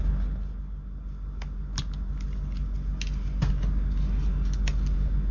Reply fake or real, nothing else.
real